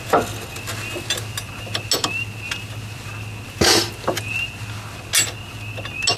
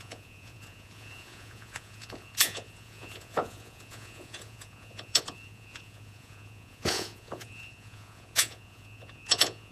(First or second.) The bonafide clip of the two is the first